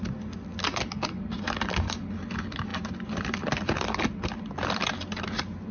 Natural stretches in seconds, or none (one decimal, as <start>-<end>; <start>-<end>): 0.0-5.7